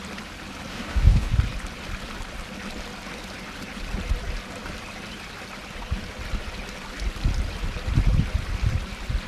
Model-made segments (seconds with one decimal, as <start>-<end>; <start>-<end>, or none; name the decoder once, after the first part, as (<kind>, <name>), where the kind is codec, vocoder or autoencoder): 0.7-1.3 (codec, DAC)